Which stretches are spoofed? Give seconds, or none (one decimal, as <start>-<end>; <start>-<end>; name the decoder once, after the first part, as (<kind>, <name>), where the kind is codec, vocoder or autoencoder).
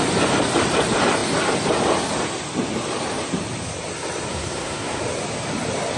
4.3-5.0 (codec, SNAC)